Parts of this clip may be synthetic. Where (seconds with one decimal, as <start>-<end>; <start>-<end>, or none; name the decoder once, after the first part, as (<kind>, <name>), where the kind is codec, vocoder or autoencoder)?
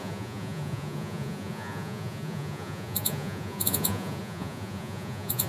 0.0-5.5 (vocoder, Vocos)